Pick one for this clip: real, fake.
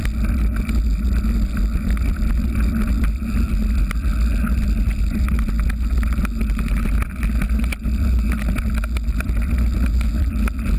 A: real